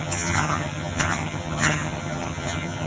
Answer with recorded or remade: remade